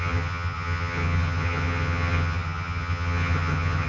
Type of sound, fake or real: fake